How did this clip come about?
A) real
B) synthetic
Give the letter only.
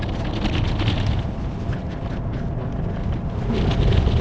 A